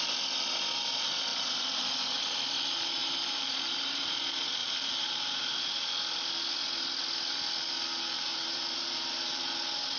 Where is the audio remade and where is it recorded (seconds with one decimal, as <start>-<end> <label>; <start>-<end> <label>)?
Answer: 0.0-1.3 recorded; 1.3-1.8 remade; 1.8-3.0 recorded; 3.0-4.0 remade; 4.0-4.6 recorded; 4.6-5.6 remade; 5.6-7.9 recorded; 7.9-9.4 remade; 9.4-10.0 recorded

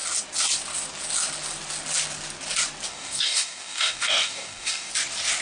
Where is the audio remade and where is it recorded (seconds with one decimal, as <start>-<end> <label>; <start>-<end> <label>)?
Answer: 0.0-2.9 recorded; 2.9-4.9 remade; 4.9-5.4 recorded

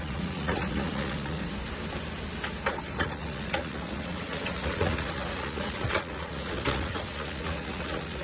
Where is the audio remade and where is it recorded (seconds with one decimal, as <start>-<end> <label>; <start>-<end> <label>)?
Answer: 0.0-1.4 remade; 1.4-3.0 recorded; 3.0-8.2 remade